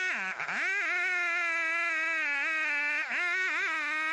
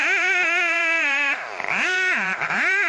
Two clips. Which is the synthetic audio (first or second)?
second